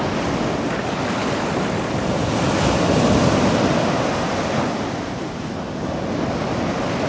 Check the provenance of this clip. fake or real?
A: real